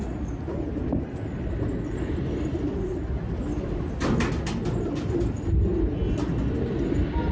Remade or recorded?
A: recorded